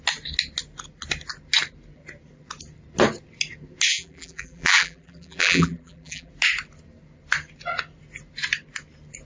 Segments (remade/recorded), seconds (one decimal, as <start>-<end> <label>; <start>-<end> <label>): 0.0-3.9 recorded; 3.9-6.3 remade; 6.3-9.3 recorded